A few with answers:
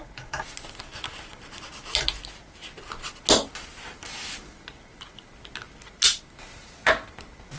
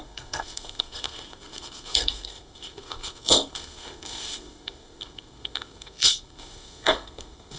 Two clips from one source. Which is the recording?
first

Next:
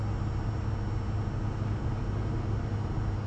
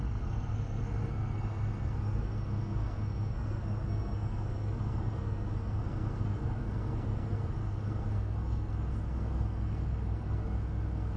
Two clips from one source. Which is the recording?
first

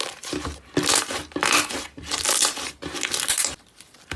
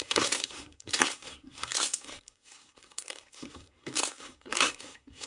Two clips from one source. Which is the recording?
first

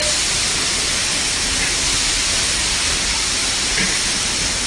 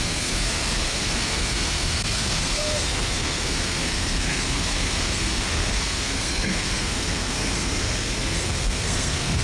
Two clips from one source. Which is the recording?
first